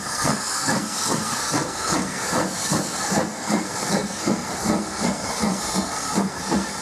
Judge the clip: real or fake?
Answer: fake